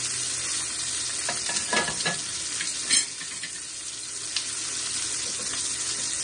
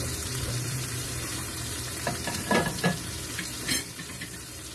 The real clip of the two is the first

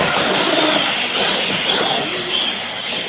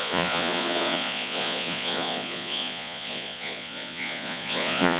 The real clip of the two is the first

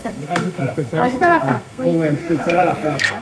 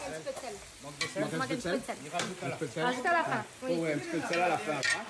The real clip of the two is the second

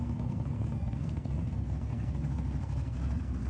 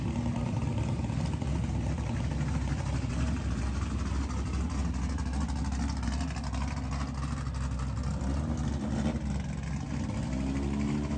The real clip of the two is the second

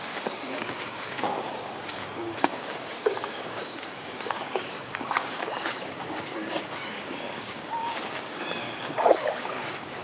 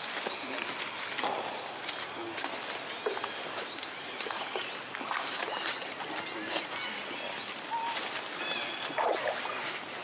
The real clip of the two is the second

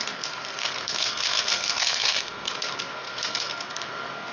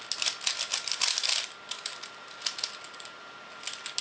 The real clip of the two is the second